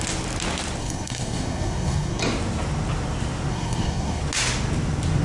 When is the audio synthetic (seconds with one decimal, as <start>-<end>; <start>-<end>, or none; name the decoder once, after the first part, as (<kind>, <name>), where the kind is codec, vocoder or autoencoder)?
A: 0.8-2.2 (codec, SNAC); 3.5-4.2